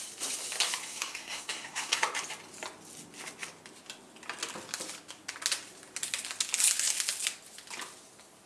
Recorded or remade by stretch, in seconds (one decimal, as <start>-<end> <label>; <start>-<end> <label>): 0.0-0.8 recorded; 0.8-2.0 remade; 2.0-8.5 recorded